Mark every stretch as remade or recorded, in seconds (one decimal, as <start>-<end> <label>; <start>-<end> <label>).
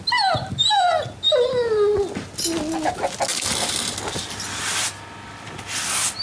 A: 0.0-6.2 recorded